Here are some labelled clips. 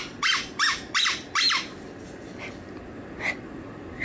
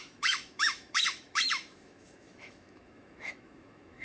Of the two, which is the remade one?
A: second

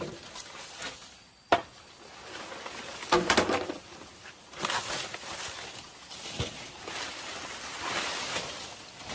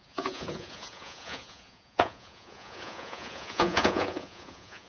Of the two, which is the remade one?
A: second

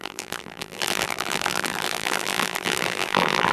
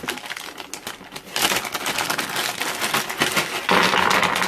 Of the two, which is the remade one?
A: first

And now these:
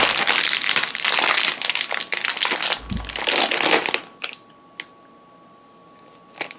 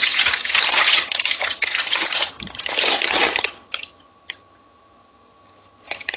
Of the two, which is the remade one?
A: second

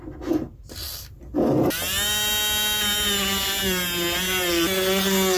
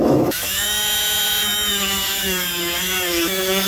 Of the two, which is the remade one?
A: second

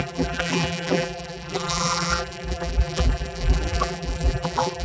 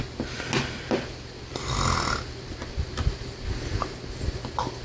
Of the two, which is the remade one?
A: first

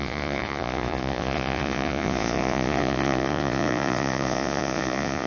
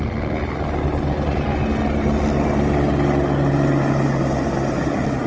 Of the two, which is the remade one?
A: first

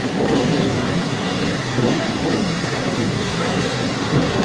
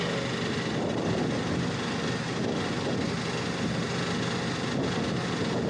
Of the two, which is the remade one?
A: first